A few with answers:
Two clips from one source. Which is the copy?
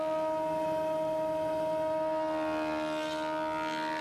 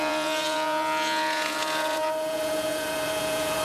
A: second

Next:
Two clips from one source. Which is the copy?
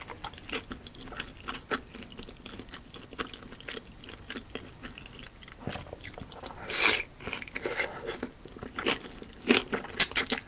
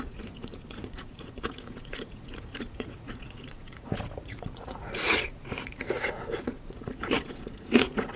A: second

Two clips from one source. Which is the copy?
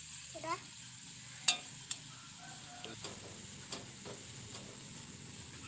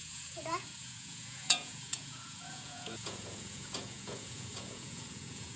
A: second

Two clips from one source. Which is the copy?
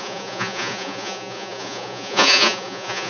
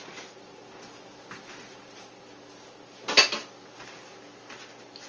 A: first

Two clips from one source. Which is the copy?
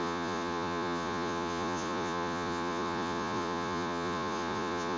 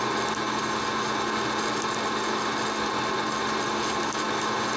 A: first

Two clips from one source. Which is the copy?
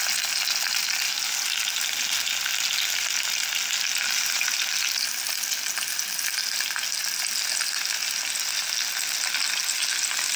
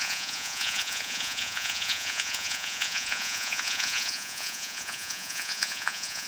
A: second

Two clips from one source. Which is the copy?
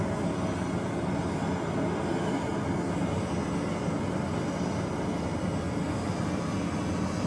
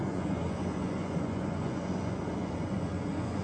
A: second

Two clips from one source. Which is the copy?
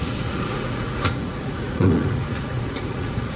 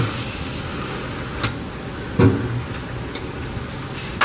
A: first